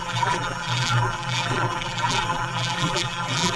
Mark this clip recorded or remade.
remade